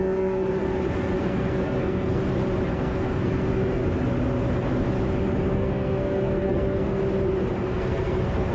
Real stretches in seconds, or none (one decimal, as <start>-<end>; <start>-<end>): 0.6-1.2; 2.2-2.7; 3.8-5.5; 7.0-7.6